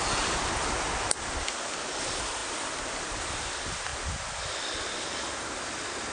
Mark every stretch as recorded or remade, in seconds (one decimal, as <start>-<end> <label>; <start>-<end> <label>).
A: 0.0-6.1 recorded